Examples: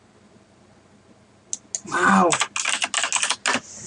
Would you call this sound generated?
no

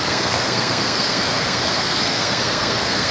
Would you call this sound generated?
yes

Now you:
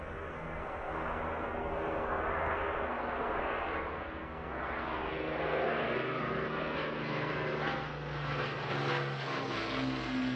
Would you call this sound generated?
yes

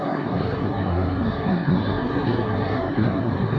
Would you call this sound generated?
yes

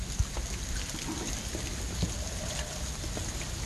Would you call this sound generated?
no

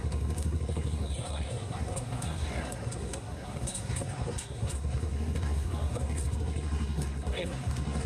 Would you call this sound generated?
yes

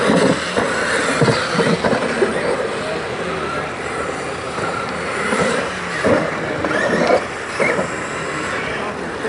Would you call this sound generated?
no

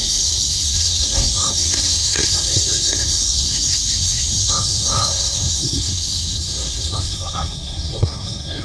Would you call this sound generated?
yes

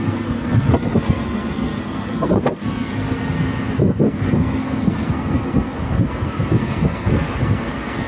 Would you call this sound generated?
yes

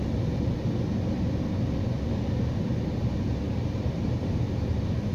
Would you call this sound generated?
no